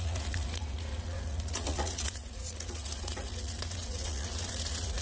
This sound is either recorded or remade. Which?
remade